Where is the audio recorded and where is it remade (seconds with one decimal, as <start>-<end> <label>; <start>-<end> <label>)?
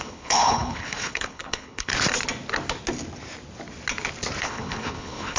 0.0-1.9 remade; 1.9-4.4 recorded; 4.4-5.4 remade